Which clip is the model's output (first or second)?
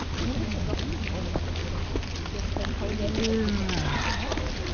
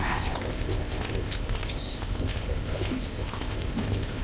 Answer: second